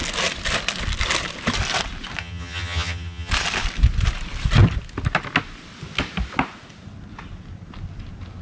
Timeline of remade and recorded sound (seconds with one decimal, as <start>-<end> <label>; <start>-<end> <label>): 0.0-2.2 recorded; 2.2-3.3 remade; 3.3-8.4 recorded